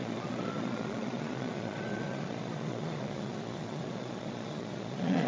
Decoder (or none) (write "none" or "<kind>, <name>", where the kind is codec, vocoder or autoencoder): vocoder, Vocos